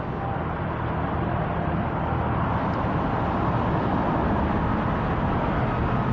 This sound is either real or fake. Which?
real